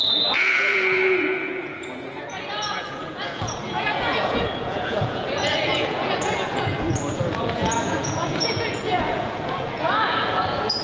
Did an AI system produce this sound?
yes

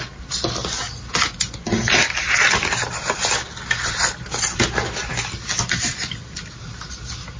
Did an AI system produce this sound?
no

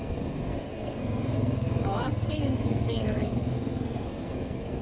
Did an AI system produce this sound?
yes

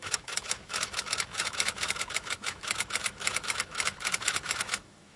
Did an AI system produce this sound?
yes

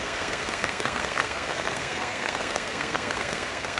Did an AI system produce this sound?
yes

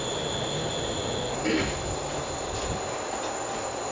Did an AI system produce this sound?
no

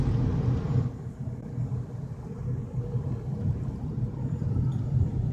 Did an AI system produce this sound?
no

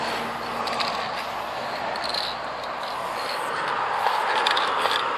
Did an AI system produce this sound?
no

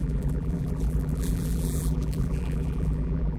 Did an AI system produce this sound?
yes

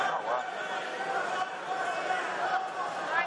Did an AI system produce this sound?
no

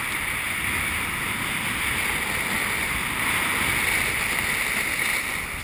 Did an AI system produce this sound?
no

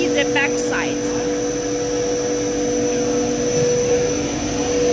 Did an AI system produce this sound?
no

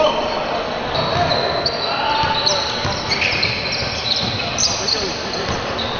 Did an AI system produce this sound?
no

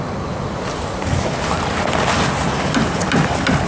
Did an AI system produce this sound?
no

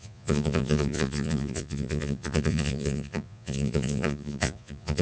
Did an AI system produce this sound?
yes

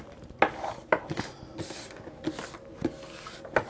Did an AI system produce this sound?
no